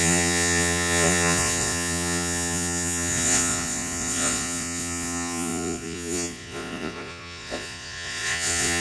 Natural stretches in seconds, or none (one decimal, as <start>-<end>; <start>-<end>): none